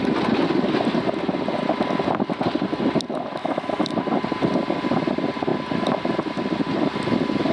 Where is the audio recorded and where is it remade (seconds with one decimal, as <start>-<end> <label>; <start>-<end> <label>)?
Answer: 0.0-3.4 recorded; 3.4-3.9 remade; 3.9-7.5 recorded